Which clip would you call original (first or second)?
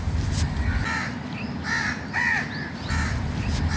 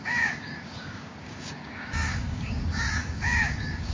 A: first